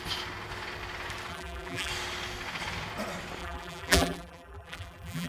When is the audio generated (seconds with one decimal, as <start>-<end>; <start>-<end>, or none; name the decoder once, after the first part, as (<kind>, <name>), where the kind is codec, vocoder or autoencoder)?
1.3-1.9 (vocoder, BigVGAN v2); 3.4-5.3